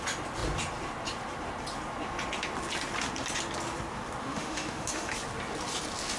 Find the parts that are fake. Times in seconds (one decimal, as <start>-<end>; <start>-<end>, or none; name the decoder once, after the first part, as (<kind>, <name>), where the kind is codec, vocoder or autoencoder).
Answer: 4.2-5.1 (autoencoder, DAC-VAE)